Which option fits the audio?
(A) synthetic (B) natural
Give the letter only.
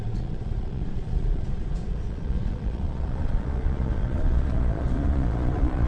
A